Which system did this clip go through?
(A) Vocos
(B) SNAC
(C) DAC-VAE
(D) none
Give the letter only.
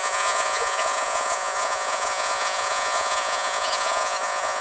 A